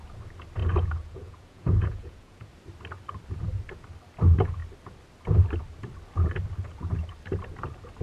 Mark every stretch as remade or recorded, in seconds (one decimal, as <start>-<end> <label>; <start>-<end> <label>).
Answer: 0.0-0.6 recorded; 0.6-2.5 remade; 2.5-8.0 recorded